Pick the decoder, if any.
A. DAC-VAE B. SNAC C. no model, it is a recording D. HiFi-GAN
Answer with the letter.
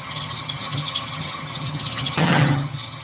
D